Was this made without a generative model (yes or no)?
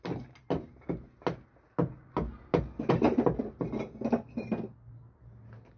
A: yes